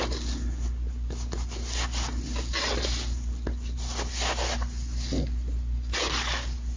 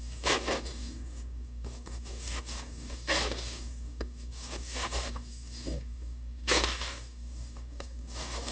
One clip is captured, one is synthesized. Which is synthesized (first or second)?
second